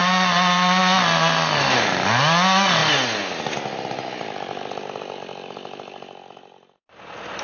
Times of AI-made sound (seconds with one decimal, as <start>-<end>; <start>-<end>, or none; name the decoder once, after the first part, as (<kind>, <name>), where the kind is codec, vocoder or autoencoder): none